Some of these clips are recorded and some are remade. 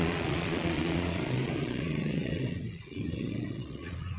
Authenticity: remade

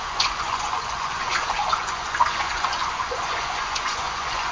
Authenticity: remade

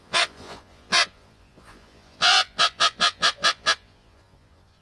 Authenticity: remade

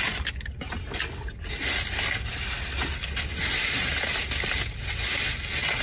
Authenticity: recorded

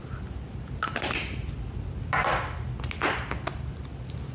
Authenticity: recorded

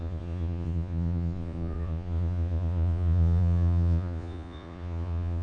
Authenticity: remade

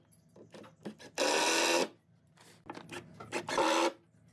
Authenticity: recorded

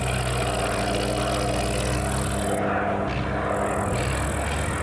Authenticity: recorded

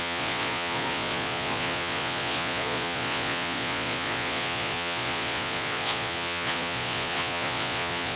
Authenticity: remade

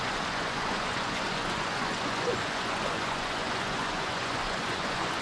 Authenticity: remade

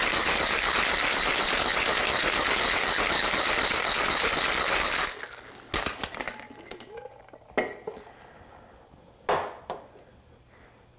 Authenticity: recorded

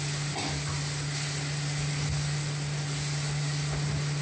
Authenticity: recorded